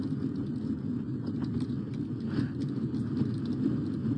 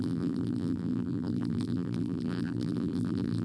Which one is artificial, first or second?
second